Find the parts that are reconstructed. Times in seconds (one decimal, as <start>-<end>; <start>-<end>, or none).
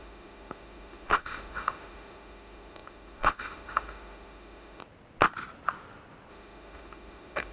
0.0-4.8; 6.3-7.5